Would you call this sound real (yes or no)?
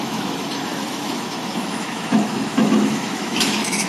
no